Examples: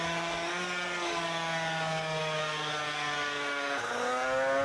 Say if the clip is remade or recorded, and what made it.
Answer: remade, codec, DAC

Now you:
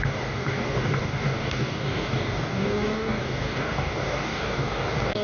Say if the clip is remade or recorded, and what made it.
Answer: remade, codec, DAC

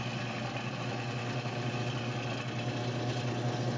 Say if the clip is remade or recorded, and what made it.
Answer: recorded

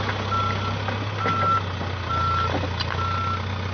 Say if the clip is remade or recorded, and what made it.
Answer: recorded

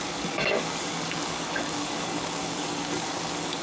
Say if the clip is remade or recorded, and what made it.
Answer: remade, codec, DAC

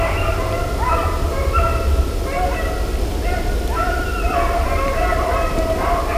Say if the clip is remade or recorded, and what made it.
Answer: recorded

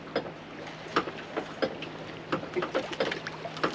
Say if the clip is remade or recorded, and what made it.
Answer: recorded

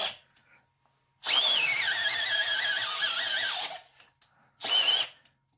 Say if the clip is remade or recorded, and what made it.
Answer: recorded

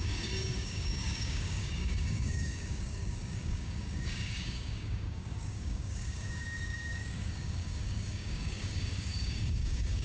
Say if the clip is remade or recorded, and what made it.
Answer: remade, codec, DAC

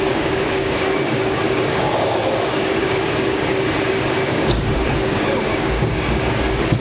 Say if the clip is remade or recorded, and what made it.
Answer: remade, codec, DAC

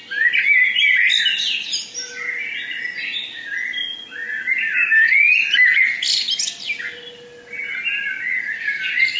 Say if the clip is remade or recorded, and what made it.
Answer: recorded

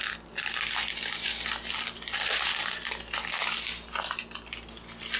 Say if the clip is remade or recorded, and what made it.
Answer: recorded